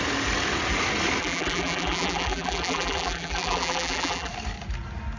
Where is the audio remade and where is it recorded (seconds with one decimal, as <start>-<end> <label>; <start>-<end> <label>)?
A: 0.0-1.2 recorded; 1.2-4.3 remade; 4.3-5.2 recorded